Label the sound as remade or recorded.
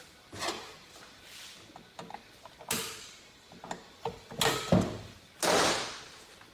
recorded